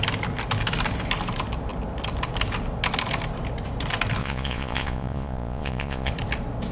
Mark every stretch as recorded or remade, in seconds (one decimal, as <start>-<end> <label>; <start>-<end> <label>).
0.0-4.2 recorded; 4.2-6.1 remade; 6.1-6.7 recorded